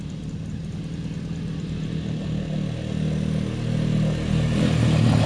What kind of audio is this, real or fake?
real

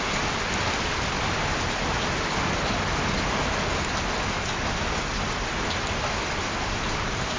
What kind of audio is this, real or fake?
real